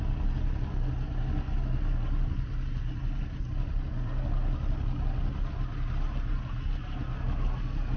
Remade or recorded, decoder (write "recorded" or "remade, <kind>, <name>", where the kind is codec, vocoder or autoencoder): recorded